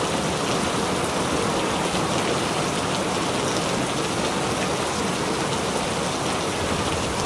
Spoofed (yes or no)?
no